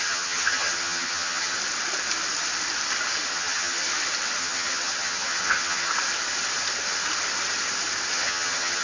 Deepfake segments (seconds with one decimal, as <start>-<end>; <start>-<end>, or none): 0.0-1.6; 3.3-3.9; 4.4-5.9; 8.1-8.8